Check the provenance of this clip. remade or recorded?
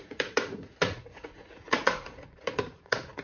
remade